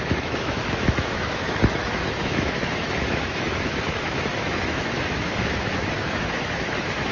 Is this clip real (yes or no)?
no